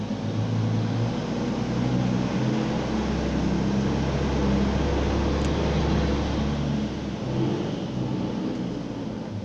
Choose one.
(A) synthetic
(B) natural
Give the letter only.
B